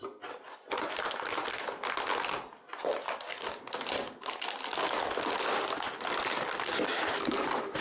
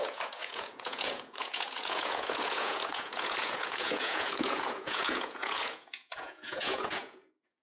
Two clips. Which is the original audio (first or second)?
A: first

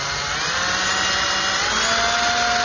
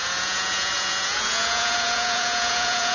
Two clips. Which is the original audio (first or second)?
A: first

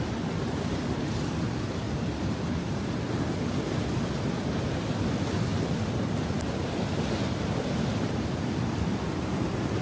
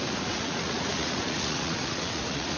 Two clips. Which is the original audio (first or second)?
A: first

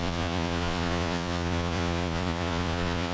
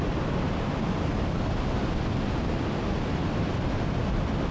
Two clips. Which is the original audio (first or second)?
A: second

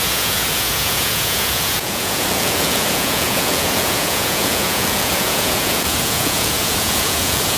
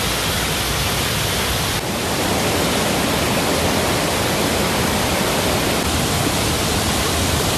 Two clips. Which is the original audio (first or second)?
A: second